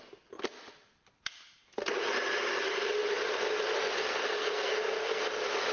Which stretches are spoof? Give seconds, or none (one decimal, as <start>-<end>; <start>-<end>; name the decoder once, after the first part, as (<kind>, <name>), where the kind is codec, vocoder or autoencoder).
3.8-5.2 (codec, SNAC)